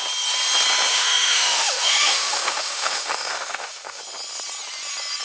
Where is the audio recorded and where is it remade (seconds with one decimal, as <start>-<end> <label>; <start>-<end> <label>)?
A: 0.0-0.9 recorded; 0.9-4.0 remade; 4.0-5.2 recorded